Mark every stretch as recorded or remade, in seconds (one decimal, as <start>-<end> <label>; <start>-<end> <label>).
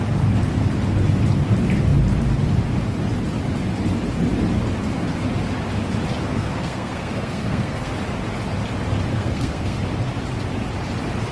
0.0-6.3 recorded; 6.3-7.9 remade; 7.9-9.1 recorded; 9.1-9.8 remade; 9.8-11.3 recorded